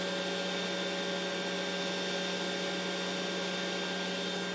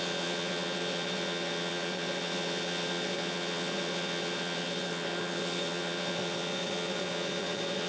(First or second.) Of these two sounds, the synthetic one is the second